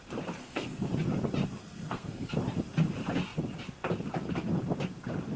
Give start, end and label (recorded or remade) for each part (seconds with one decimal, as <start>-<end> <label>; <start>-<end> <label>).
0.0-0.4 recorded; 0.4-0.9 remade; 0.9-1.6 recorded; 1.6-2.3 remade; 2.3-5.4 recorded